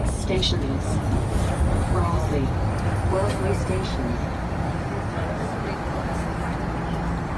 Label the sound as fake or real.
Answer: real